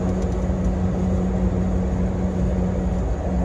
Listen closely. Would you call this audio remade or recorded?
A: recorded